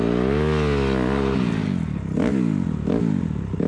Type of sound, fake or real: real